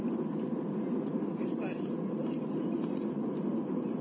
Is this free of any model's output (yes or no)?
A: yes